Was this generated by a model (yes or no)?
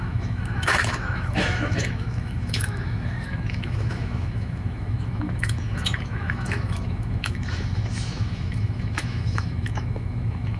yes